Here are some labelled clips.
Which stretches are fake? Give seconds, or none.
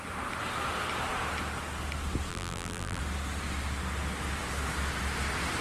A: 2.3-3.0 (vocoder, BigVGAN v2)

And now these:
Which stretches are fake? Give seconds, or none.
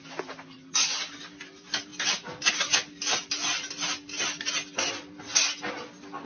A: none